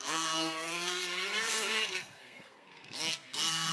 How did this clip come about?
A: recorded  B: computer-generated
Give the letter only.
B